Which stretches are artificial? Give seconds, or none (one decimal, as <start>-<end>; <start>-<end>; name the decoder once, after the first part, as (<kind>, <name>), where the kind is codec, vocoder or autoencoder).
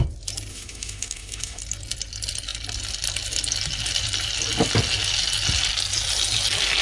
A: 0.5-1.6 (autoencoder, DAC-VAE)